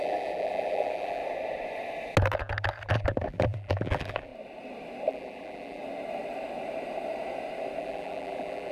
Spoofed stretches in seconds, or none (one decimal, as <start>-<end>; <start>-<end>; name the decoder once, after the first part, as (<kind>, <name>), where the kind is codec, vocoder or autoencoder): 0.0-1.2 (vocoder, BigVGAN v2); 2.9-4.3; 5.1-5.8; 7.8-8.7